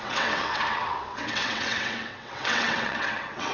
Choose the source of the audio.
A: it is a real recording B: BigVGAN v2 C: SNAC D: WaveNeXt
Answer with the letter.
D